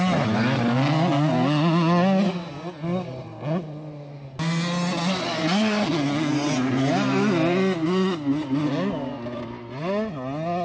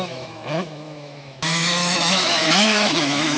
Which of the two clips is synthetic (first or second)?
second